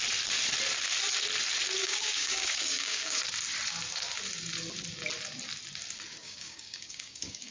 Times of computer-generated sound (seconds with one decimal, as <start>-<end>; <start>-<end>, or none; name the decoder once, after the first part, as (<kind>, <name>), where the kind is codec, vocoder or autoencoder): 1.8-3.2 (codec, DAC); 6.2-7.5